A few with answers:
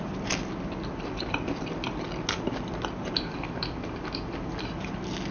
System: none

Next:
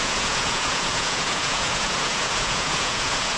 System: vocoder, Vocos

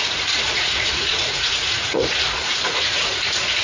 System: vocoder, Vocos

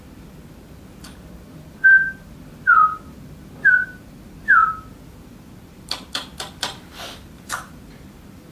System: vocoder, BigVGAN v2